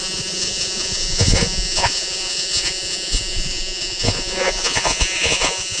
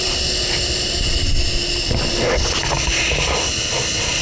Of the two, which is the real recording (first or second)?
second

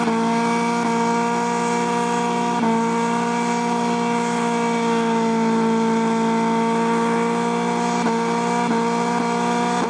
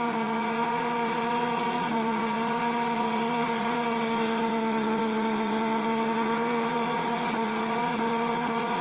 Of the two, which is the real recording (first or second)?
first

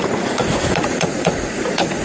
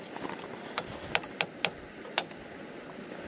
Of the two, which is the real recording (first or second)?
second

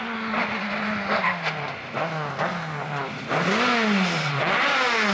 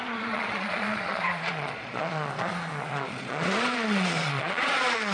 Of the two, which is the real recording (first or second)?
first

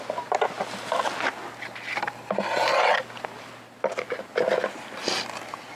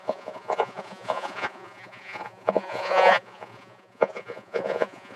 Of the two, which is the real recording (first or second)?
first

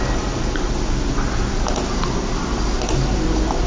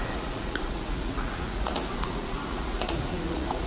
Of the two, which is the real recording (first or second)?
first